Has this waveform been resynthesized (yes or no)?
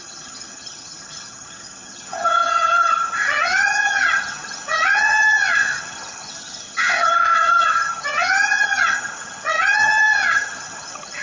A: yes